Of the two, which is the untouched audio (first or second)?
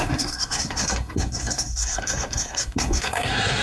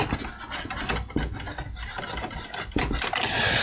second